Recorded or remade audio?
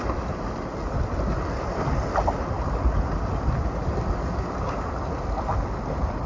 recorded